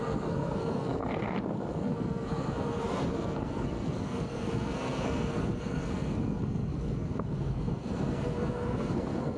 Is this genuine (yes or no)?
no